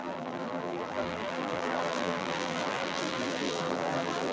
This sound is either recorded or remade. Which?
remade